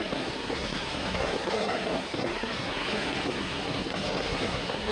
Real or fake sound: fake